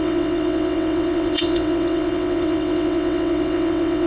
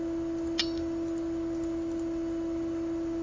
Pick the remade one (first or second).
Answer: first